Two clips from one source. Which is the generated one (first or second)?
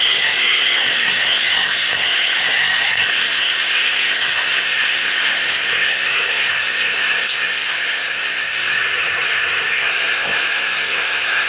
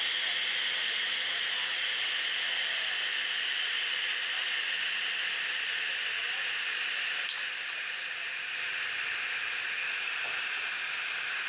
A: first